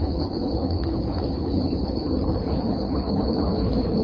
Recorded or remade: remade